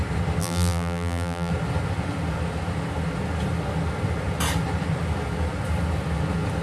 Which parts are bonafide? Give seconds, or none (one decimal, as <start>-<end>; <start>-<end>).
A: 0.0-0.4; 1.5-6.6